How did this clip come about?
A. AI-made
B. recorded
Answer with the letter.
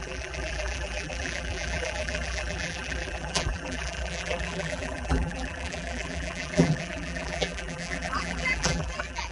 A